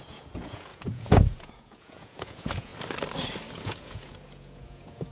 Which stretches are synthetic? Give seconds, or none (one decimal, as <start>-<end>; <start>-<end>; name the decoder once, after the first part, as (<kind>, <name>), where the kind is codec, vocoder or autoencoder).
0.0-2.7 (vocoder, Vocos); 3.5-5.1